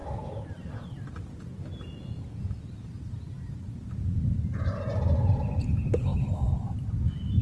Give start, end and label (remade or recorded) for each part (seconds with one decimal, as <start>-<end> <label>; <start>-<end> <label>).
0.0-4.4 remade; 4.4-7.4 recorded